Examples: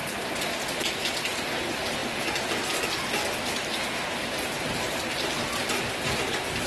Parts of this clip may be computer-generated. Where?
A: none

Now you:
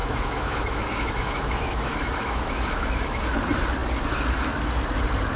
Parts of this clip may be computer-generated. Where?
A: 0.0-3.2 (autoencoder, DAC-VAE)

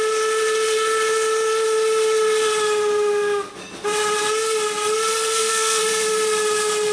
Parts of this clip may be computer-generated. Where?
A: 5.1-5.8 (codec, SNAC)

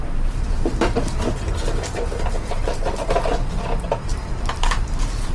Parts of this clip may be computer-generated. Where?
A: 0.0-5.3 (vocoder, BigVGAN v2)

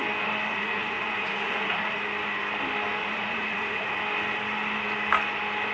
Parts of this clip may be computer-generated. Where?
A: 0.5-2.0 (vocoder, Vocos); 3.0-3.9

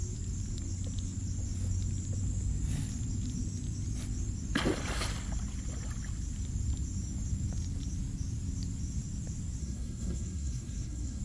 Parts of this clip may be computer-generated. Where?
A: 9.6-11.2 (codec, SNAC)

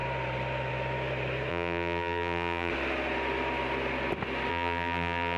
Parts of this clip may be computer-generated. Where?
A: 1.5-2.7 (vocoder, BigVGAN v2); 4.5-5.4